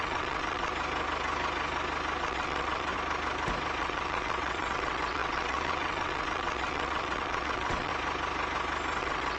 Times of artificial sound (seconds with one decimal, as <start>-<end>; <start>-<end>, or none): 0.0-0.7; 2.2-2.9; 3.8-7.9; 9.0-9.4